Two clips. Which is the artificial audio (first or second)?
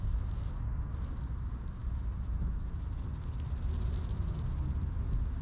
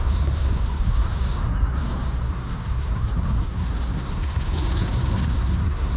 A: second